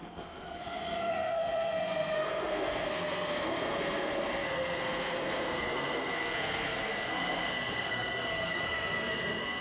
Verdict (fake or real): fake